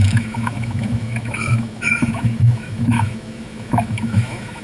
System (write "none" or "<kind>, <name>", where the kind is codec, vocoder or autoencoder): autoencoder, DAC-VAE